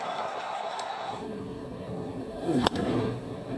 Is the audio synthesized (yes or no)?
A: yes